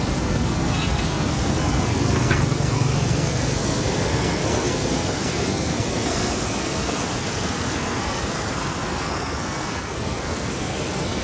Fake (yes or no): yes